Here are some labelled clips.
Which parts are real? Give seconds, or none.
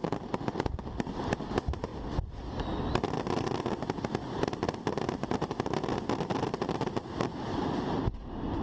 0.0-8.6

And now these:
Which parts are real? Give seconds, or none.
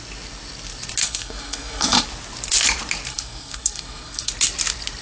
0.0-1.0; 2.0-3.1; 4.3-5.0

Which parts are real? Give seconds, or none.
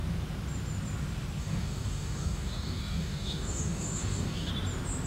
0.0-1.4; 4.5-5.1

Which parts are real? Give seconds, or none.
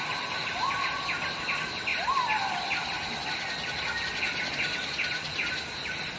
0.0-6.2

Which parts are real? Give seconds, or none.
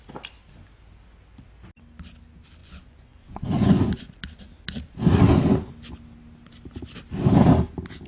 0.0-2.6; 4.2-8.1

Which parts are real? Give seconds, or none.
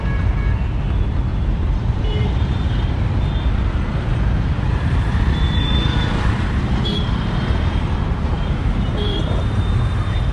0.0-1.3; 3.0-4.1; 9.2-10.3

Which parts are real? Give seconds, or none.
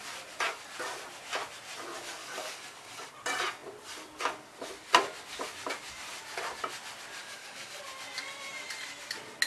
0.0-2.2; 3.1-7.2; 7.8-9.5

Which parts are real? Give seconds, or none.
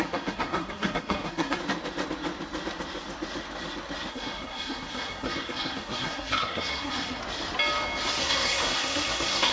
1.6-4.1; 7.2-8.2